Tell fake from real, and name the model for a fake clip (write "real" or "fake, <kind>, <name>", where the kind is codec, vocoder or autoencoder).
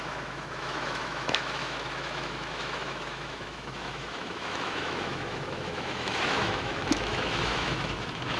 fake, autoencoder, DAC-VAE